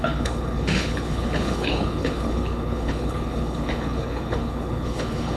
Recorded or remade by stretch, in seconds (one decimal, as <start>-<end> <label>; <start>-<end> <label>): 0.0-5.4 remade